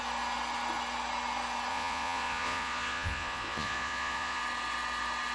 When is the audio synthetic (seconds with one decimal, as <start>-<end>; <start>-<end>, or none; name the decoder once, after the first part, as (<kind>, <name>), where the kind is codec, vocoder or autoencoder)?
1.7-4.4 (vocoder, Vocos)